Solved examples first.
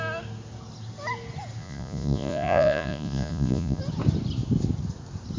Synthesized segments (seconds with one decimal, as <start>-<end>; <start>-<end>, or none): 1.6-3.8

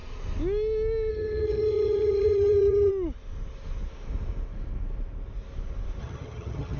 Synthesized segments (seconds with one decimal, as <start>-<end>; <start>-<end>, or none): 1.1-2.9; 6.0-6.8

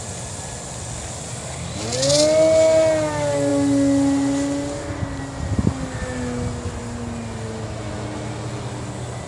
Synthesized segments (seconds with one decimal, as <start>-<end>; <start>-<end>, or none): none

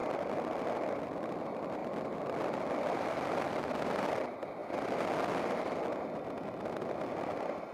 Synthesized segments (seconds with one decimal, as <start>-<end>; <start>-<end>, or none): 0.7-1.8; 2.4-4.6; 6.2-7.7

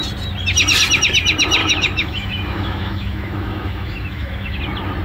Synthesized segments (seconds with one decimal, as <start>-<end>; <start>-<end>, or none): 1.6-4.6

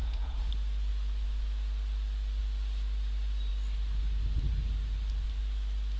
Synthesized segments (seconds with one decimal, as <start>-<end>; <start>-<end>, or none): 0.0-0.5